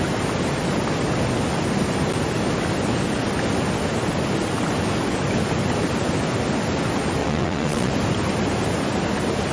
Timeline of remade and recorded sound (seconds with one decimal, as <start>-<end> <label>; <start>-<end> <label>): 0.0-7.2 recorded; 7.2-7.9 remade; 7.9-9.5 recorded